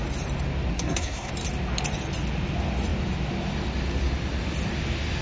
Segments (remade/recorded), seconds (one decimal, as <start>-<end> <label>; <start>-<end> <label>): 0.0-0.7 recorded; 0.7-1.3 remade; 1.3-5.2 recorded